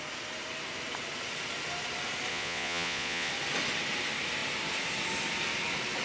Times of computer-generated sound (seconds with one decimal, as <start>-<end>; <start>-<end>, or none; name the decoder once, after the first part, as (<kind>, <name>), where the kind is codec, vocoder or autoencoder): 2.3-3.3 (vocoder, Vocos)